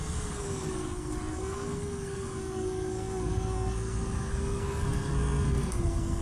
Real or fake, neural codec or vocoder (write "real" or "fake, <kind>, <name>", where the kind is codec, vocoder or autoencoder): fake, codec, SNAC